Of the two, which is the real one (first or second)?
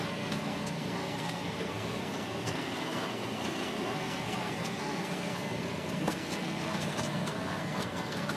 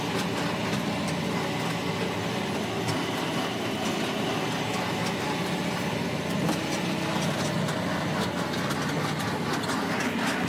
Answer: second